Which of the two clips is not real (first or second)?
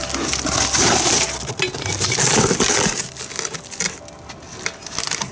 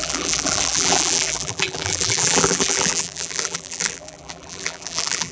second